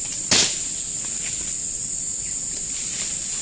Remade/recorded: recorded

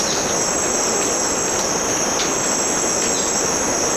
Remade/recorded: recorded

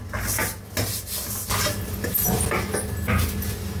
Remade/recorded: recorded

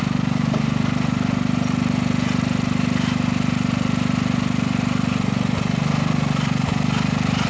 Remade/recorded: remade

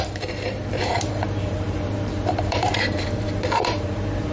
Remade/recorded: remade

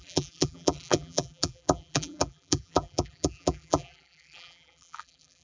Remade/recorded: remade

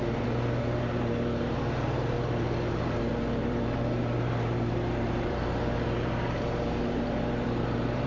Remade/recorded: remade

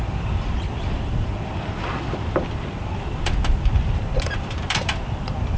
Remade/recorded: remade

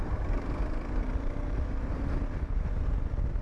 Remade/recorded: remade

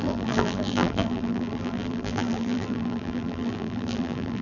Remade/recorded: remade